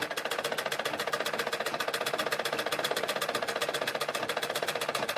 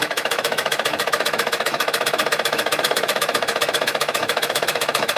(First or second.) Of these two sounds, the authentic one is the first